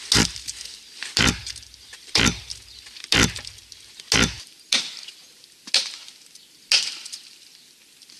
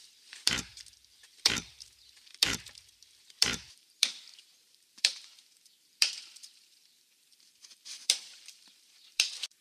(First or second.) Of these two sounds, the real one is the first